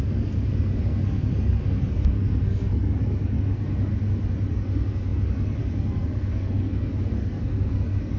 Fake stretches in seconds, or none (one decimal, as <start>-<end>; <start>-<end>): 0.0-3.9; 4.5-8.2